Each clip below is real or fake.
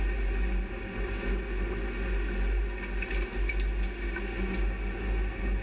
real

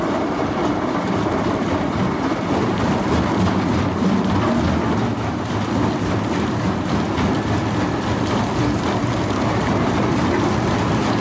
real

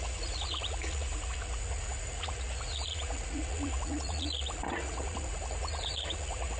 fake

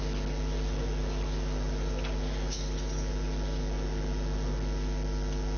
real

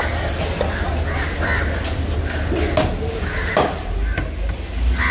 real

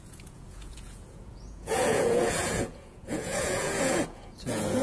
fake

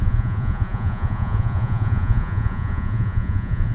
fake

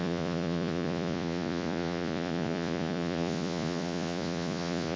fake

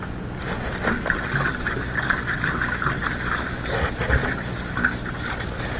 real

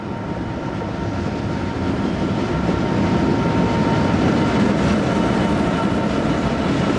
real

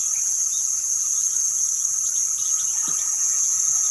fake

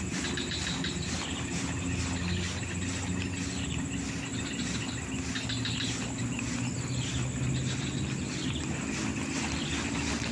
real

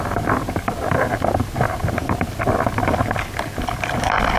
real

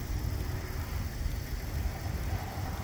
real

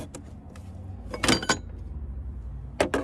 real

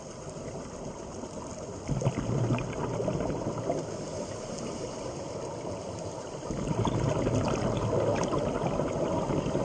real